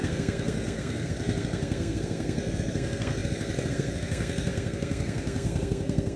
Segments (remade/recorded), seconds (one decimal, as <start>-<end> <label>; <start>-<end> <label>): 0.0-6.2 remade